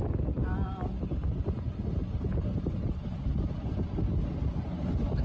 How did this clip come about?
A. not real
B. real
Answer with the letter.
B